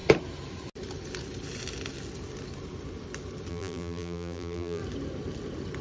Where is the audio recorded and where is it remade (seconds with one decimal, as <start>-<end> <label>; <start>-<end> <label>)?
0.0-3.5 recorded; 3.5-4.8 remade; 4.8-5.8 recorded